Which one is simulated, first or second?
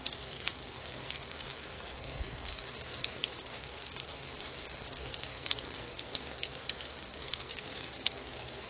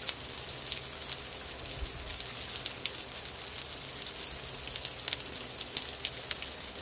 first